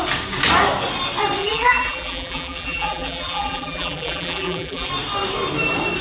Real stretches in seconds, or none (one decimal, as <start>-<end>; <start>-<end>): 0.0-1.4; 4.9-6.0